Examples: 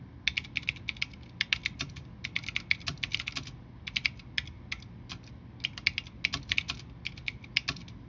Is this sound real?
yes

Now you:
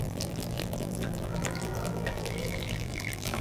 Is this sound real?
no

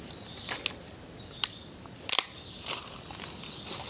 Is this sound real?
yes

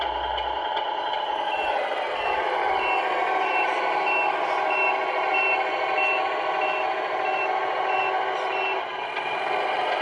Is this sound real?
yes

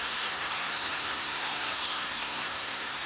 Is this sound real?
no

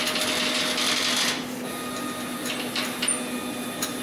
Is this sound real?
yes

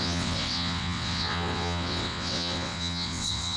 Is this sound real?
no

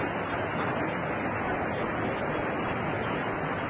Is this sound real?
yes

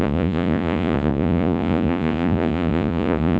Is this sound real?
no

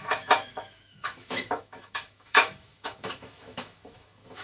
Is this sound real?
no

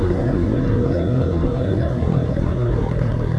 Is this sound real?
no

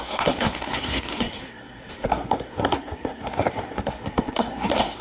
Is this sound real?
no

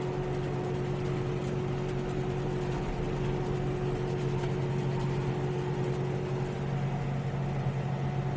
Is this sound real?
yes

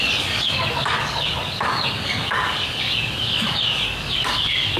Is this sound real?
no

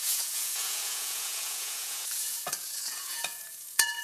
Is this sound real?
no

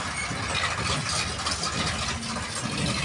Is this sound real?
yes